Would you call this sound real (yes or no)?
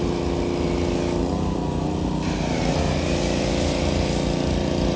yes